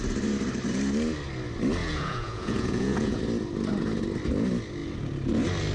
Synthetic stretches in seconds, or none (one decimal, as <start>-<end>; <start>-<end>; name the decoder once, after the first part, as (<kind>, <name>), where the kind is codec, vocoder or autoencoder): 1.8-3.2 (vocoder, Vocos)